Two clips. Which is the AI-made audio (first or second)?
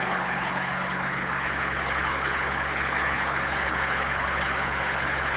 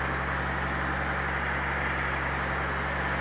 first